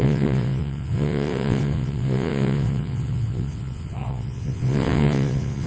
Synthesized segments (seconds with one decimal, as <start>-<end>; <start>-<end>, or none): 0.0-5.7